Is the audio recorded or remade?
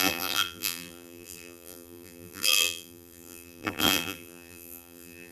remade